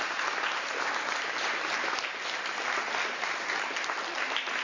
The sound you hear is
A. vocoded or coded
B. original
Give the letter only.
B